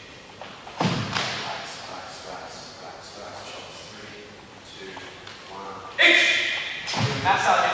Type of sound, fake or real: real